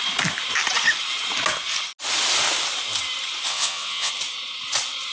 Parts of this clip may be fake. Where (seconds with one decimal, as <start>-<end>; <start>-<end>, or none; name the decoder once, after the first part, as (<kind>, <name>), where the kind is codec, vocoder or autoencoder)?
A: 3.5-4.1 (vocoder, WaveNeXt)